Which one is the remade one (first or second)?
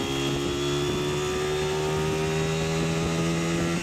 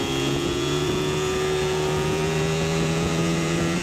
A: second